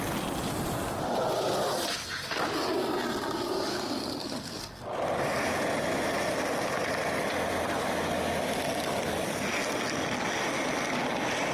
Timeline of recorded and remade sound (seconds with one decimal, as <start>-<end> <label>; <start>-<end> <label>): 0.0-3.7 recorded; 3.7-4.6 remade; 4.6-11.5 recorded